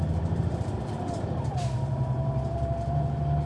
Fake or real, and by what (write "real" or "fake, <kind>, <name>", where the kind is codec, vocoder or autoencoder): fake, vocoder, BigVGAN v2